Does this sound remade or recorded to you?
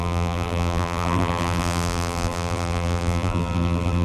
remade